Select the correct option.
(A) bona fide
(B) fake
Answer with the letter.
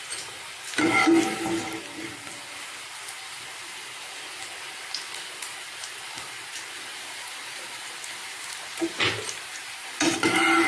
A